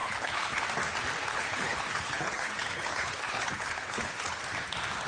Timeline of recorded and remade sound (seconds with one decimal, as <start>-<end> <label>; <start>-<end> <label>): 0.0-0.6 remade; 0.6-1.3 recorded; 1.3-4.4 remade; 4.4-5.1 recorded